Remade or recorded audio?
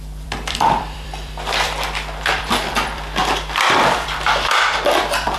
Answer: remade